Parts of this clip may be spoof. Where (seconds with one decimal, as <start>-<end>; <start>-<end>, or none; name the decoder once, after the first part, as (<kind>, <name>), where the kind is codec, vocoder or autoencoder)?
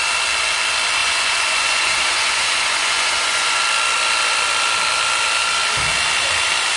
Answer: 1.0-3.6 (vocoder, Vocos)